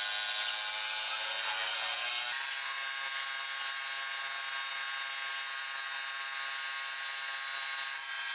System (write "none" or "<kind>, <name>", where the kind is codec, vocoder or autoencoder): none